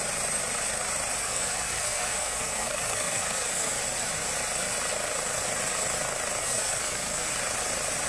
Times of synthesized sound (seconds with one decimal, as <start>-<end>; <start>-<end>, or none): 1.2-3.8; 6.4-7.3